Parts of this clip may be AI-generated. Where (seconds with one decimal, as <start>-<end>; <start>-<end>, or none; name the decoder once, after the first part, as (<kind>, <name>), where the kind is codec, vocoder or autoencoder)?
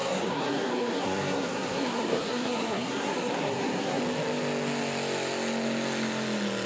0.0-4.0 (codec, SNAC)